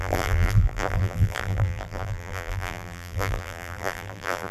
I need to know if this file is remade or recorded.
remade